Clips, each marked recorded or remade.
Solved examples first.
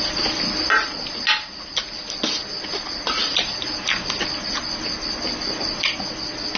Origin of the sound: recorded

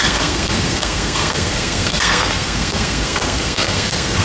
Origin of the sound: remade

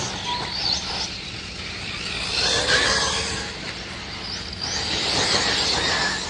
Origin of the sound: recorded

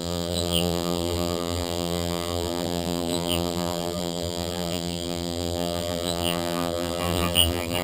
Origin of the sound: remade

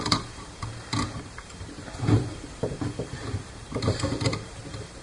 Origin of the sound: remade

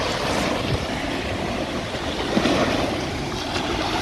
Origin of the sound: recorded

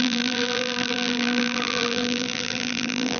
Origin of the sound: remade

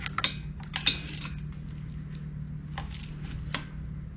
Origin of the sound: recorded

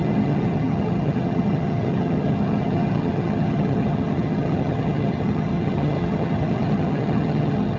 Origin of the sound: remade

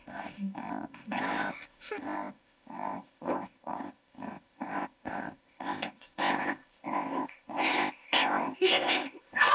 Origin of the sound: remade